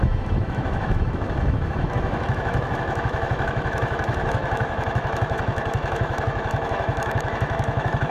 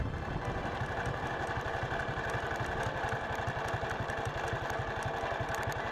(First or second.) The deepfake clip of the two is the first